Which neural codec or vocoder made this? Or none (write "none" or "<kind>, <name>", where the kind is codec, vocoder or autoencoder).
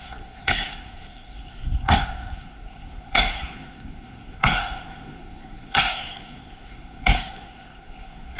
codec, SNAC